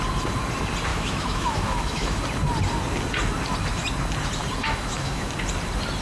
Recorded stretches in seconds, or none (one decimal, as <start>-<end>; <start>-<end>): 0.0-0.9; 2.2-4.6; 5.3-6.0